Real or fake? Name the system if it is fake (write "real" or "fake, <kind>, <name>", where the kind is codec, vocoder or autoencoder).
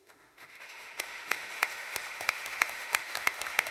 fake, autoencoder, DAC-VAE